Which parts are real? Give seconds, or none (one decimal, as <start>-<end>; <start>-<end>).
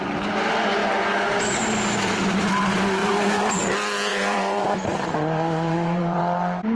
0.0-3.0; 3.6-4.1; 6.2-6.7